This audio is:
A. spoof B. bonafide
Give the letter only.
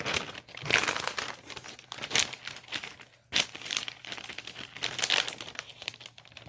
B